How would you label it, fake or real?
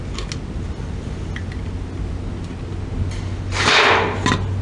real